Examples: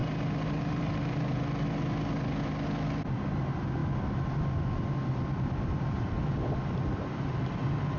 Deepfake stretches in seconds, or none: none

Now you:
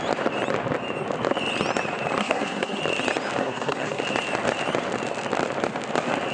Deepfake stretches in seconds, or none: 2.2-2.8 (codec, SNAC); 3.4-4.0

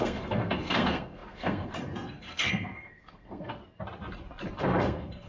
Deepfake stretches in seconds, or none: 0.0-3.6 (codec, SNAC); 4.6-5.3

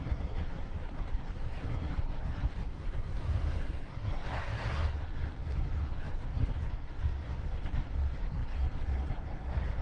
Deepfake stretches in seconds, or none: 0.0-9.8 (codec, SNAC)

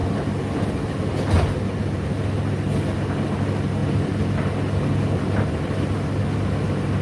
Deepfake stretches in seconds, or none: none

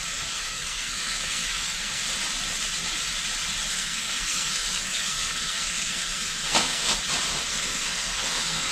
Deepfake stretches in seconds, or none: 0.0-2.0 (codec, SNAC); 3.7-6.9; 7.5-8.7

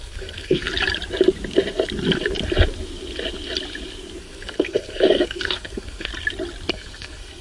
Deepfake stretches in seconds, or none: 0.0-0.7 (codec, SNAC); 4.2-6.1; 6.7-7.4

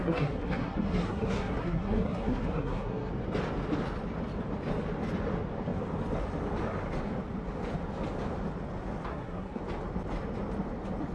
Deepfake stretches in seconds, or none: 0.0-3.1 (codec, SNAC); 9.1-9.6